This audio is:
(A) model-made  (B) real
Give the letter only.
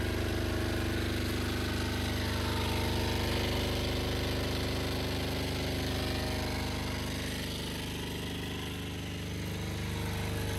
B